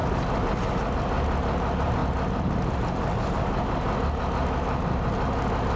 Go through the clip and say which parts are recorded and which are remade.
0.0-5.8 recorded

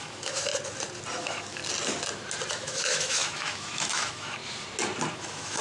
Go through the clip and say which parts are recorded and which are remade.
0.0-0.5 remade; 0.5-1.2 recorded; 1.2-1.6 remade; 1.6-2.5 recorded; 2.5-4.4 remade; 4.4-5.1 recorded; 5.1-5.6 remade

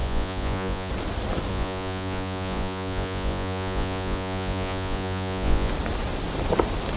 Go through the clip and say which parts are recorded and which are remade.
0.0-0.9 remade; 0.9-1.5 recorded; 1.5-5.7 remade; 5.7-7.0 recorded

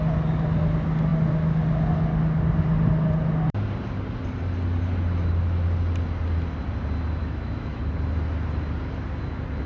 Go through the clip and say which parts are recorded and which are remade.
0.0-7.2 recorded; 7.2-7.8 remade; 7.8-9.7 recorded

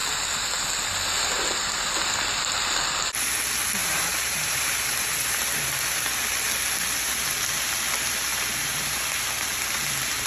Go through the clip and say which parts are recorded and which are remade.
0.0-3.8 recorded; 3.8-5.4 remade; 5.4-10.3 recorded

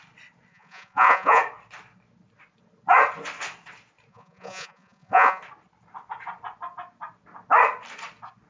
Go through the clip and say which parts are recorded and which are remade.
0.0-0.5 recorded; 0.5-1.4 remade; 1.4-4.1 recorded; 4.1-5.4 remade; 5.4-8.5 recorded